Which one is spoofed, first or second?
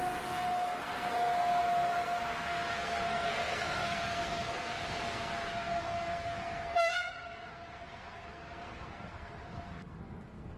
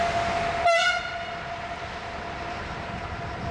first